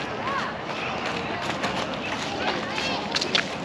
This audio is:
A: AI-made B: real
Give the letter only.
B